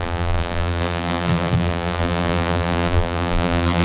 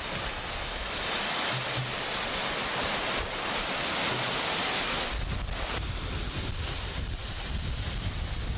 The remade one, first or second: first